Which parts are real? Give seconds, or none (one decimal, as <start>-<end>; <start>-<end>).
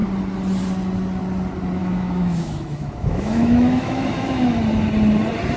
0.0-1.8; 4.6-5.6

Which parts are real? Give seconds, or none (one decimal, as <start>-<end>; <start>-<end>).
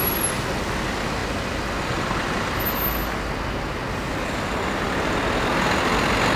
0.0-6.4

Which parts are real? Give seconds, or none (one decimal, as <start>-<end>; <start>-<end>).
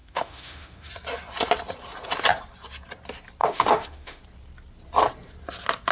0.9-3.4; 4.2-5.9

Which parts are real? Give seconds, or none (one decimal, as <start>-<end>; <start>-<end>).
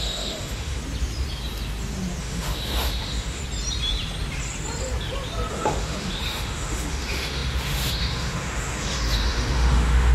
0.8-2.2; 3.4-5.5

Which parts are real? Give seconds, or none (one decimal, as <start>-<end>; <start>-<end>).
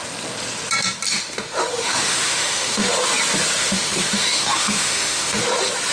0.0-1.1; 2.9-3.6; 5.4-5.9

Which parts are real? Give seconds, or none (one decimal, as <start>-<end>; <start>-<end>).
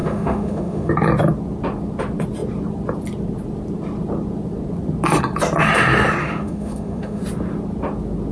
0.9-6.2; 7.2-8.3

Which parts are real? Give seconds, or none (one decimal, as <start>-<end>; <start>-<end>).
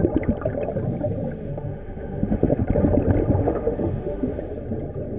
0.0-1.4; 2.6-3.4; 4.4-5.2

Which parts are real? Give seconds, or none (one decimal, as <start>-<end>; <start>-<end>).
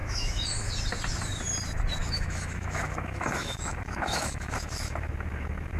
0.7-2.0